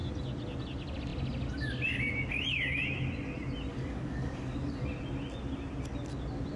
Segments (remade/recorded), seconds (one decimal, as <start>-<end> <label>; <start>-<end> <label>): 0.0-3.7 recorded; 3.7-4.9 remade; 4.9-6.6 recorded